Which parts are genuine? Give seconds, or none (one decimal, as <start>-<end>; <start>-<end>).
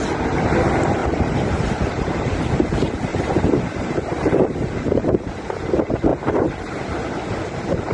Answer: 0.0-1.0; 2.7-3.1; 5.3-6.1; 6.7-7.9